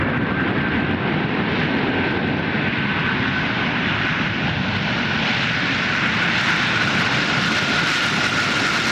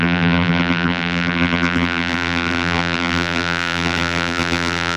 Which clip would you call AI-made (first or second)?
second